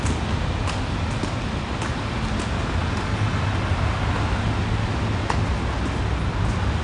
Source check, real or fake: real